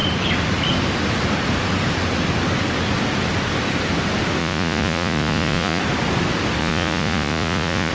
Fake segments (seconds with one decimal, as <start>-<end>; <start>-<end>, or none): 4.4-5.8; 6.6-7.9